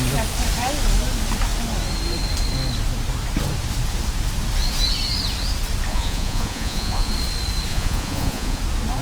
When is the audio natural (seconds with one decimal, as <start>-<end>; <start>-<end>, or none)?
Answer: 0.0-5.9; 7.1-7.7; 8.6-9.0